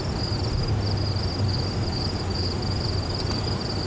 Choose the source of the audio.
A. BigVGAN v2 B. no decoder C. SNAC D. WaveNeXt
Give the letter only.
B